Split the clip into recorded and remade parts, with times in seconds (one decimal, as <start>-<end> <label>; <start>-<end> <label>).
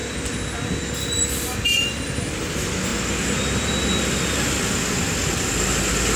0.0-6.2 recorded